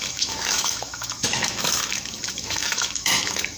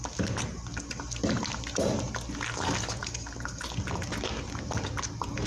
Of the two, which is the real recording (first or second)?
second